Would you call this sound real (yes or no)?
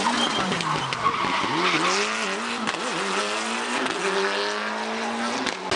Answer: yes